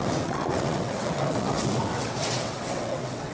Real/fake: fake